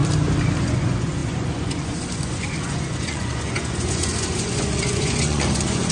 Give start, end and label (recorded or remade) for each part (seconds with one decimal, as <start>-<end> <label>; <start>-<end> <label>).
0.0-0.6 recorded; 0.6-5.9 remade